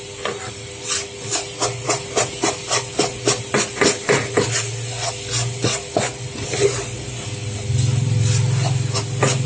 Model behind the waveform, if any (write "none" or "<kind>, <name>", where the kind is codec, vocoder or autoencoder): none